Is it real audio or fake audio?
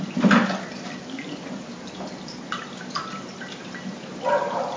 real